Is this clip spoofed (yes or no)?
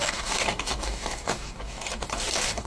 yes